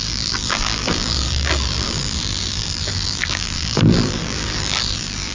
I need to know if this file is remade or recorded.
remade